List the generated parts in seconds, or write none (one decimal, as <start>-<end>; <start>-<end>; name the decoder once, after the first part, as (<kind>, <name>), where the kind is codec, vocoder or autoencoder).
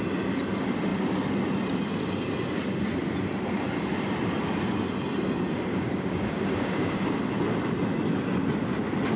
5.7-7.4 (codec, DAC)